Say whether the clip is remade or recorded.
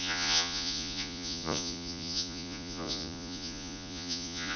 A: remade